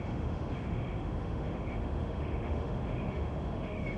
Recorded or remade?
remade